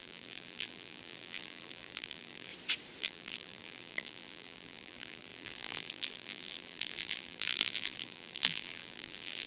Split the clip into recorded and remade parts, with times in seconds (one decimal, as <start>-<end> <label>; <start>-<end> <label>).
0.0-2.5 remade; 2.5-3.0 recorded; 3.0-9.5 remade